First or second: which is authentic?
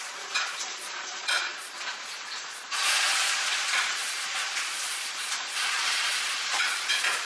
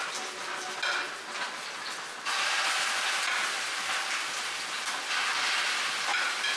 second